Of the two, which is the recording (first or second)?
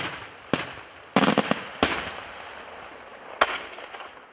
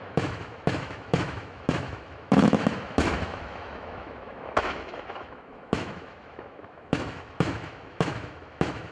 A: first